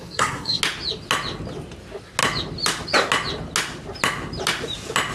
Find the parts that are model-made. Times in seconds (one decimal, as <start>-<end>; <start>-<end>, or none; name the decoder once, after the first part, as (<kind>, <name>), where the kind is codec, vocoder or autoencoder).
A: 0.0-0.6 (codec, SNAC)